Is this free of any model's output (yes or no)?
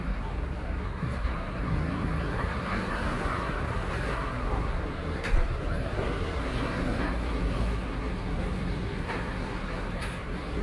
no